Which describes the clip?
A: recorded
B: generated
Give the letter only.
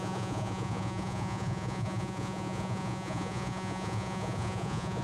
B